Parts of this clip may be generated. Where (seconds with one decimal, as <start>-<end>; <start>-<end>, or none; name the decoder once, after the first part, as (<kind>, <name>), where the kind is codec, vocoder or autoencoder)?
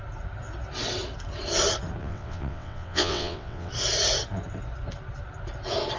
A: 2.0-3.7 (vocoder, WaveNeXt)